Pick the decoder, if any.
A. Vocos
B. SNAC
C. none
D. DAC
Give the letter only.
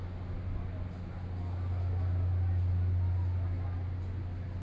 C